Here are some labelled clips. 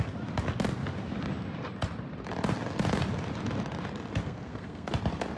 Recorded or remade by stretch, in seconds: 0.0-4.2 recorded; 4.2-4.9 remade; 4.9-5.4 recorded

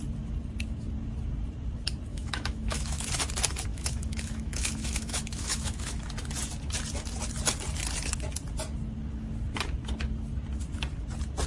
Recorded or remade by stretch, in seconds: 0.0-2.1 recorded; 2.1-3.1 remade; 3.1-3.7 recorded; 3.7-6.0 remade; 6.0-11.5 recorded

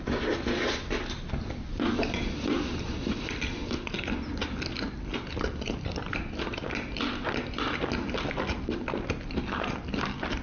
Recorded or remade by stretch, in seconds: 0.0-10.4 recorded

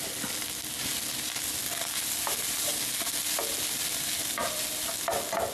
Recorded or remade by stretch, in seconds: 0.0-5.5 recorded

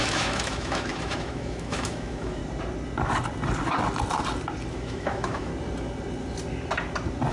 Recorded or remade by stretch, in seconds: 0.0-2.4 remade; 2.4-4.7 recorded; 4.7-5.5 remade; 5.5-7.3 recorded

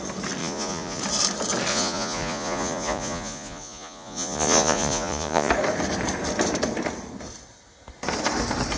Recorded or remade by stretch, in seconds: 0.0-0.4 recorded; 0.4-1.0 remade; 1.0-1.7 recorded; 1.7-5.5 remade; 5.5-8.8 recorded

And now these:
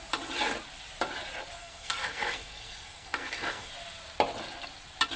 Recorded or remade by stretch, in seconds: 0.0-1.6 recorded; 1.6-3.7 remade; 3.7-5.2 recorded

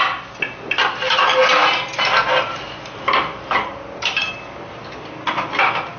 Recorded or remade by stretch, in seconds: 0.0-6.0 recorded